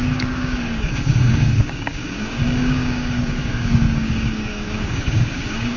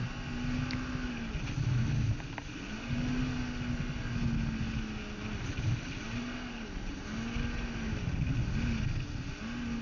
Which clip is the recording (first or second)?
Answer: second